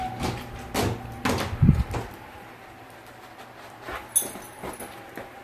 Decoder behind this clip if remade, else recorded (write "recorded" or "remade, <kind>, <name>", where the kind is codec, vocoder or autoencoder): recorded